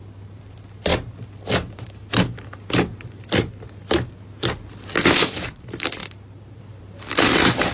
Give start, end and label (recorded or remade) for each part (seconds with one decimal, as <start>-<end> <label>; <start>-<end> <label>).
0.0-0.9 remade; 0.9-4.8 recorded; 4.8-6.0 remade; 6.0-6.6 recorded; 6.6-7.7 remade